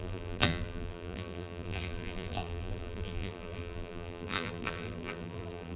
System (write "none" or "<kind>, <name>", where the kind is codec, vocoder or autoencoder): vocoder, BigVGAN v2